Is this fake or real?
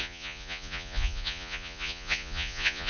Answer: fake